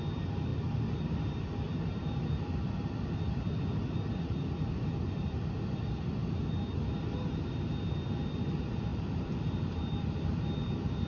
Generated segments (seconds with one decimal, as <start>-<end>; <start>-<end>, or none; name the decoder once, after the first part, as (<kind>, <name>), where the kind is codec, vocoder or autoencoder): 0.5-5.5 (vocoder, BigVGAN v2); 8.9-10.5